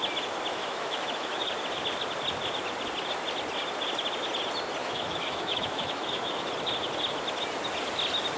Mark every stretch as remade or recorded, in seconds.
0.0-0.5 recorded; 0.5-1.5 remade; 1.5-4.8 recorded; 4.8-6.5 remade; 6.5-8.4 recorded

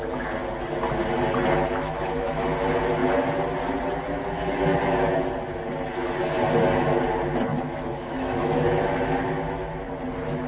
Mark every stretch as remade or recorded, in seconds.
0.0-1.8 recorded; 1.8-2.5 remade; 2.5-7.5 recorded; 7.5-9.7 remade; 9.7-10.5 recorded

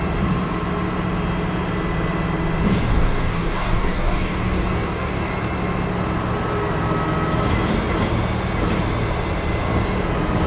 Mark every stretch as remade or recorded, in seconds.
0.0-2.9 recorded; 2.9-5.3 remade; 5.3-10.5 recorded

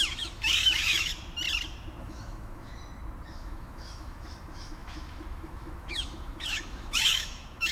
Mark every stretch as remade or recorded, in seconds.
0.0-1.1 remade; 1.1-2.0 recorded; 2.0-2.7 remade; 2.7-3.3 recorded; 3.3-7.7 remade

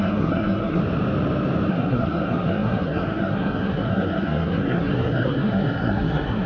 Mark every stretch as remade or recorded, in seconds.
0.0-0.8 remade; 0.8-1.7 recorded; 1.7-6.5 remade